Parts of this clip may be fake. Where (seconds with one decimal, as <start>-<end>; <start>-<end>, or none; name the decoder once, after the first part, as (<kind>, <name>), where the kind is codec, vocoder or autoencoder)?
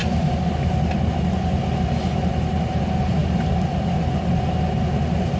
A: none